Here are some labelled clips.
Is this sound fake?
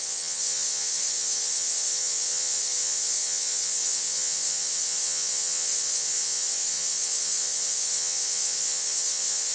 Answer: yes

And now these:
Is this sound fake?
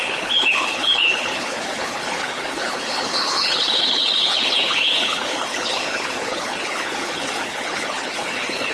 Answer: yes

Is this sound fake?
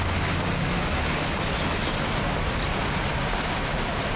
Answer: no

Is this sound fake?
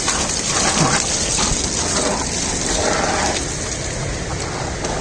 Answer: no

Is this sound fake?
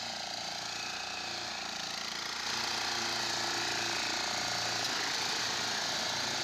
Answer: no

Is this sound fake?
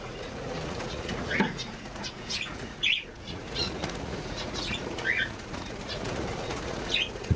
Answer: yes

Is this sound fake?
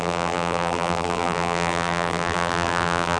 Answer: yes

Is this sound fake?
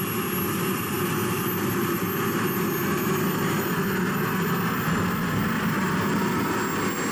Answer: no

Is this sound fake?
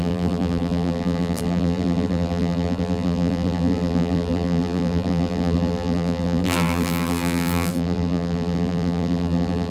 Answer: yes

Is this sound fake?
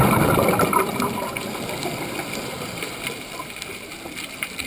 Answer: yes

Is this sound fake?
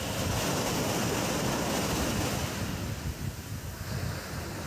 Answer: no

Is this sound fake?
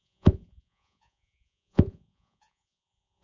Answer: yes